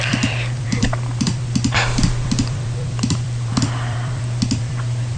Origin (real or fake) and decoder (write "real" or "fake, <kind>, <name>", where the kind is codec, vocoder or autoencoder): fake, vocoder, BigVGAN v2